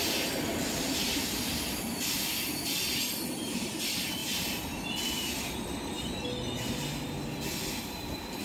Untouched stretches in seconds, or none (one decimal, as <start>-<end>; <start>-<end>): 0.0-8.4